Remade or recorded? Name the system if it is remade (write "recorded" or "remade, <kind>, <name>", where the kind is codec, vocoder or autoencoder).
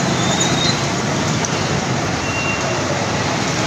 remade, vocoder, BigVGAN v2